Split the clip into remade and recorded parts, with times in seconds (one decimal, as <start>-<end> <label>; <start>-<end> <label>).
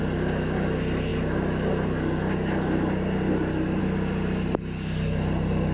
0.0-5.7 recorded